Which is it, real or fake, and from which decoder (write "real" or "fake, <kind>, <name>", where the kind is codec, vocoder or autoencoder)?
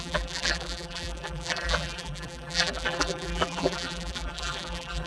fake, vocoder, BigVGAN v2